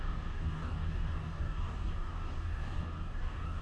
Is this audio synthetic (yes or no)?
yes